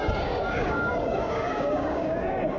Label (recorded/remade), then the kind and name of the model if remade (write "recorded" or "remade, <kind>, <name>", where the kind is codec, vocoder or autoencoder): remade, codec, DAC